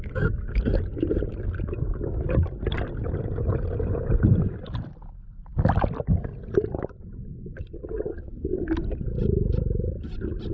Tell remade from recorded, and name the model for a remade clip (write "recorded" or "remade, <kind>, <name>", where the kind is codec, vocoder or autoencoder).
recorded